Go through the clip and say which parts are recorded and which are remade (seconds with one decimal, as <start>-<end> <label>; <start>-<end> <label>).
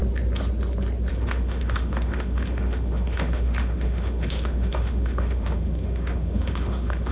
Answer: 0.0-1.1 recorded; 1.1-7.1 remade